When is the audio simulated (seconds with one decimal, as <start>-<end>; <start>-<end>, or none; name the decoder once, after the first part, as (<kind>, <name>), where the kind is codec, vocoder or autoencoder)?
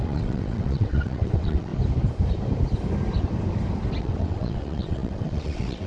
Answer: 0.0-1.7 (vocoder, WaveNeXt); 4.0-5.9